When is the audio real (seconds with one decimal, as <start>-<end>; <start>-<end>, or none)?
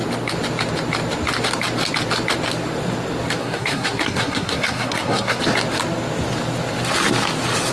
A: 0.0-3.4; 5.4-7.7